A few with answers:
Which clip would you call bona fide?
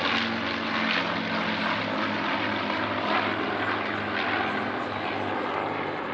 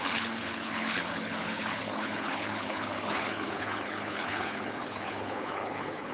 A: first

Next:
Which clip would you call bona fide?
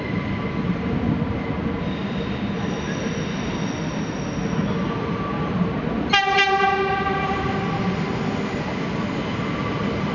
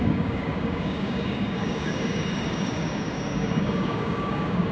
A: first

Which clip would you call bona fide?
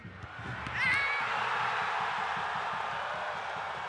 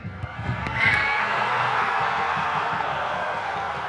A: first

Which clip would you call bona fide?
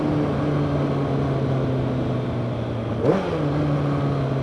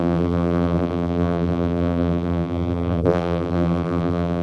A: first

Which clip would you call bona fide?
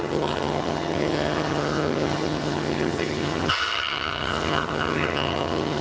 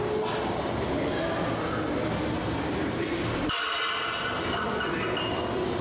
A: second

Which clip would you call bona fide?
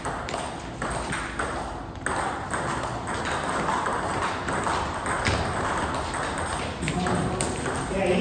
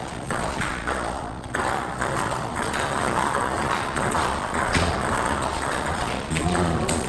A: first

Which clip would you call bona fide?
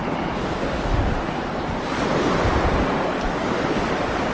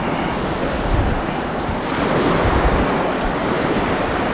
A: second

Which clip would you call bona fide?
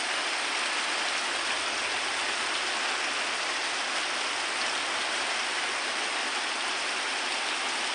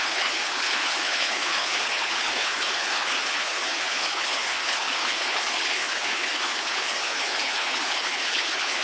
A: first